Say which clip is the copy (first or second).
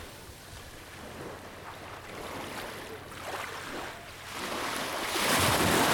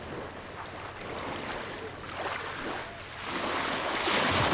first